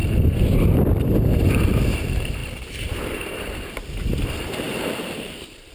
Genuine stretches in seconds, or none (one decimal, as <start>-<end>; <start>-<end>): 0.0-0.9; 2.4-2.9